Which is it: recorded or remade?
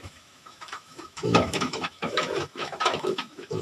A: remade